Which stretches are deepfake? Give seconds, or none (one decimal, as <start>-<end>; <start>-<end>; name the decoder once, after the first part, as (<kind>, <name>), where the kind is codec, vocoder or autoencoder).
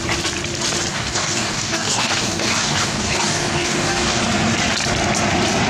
0.9-4.2 (codec, DAC)